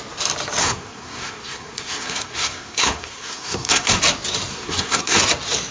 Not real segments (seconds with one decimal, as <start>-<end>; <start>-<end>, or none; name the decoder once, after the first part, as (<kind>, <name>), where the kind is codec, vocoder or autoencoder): 0.6-4.0 (codec, SNAC); 4.5-5.2